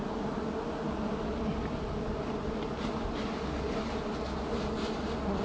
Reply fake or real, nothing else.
real